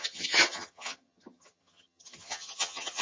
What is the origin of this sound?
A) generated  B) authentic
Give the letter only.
A